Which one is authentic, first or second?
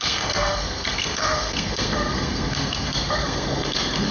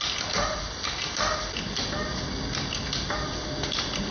second